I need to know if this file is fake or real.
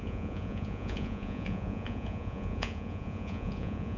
fake